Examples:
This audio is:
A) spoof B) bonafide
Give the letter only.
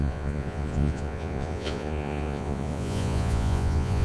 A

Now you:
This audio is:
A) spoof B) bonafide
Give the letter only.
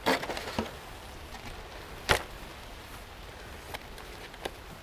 B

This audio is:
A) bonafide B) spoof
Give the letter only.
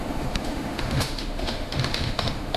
B